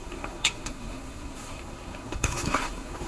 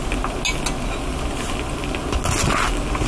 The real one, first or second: second